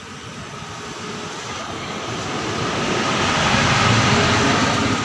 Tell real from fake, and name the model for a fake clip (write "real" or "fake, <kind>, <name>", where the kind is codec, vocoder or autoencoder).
real